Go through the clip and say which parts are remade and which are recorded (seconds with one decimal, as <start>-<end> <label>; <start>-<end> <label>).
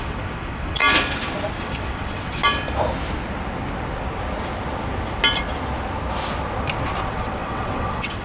0.0-0.8 remade; 0.8-1.6 recorded; 1.6-2.4 remade; 2.4-7.0 recorded; 7.0-8.2 remade